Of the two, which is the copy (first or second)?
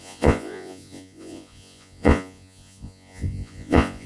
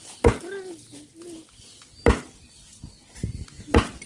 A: first